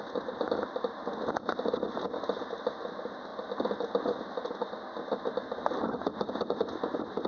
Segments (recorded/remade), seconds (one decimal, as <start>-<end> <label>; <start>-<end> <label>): 0.0-7.3 recorded